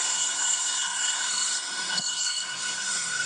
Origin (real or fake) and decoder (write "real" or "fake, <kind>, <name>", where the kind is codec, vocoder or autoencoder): fake, codec, SNAC